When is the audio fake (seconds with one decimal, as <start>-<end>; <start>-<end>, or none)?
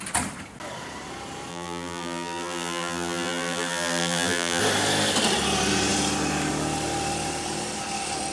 1.5-4.6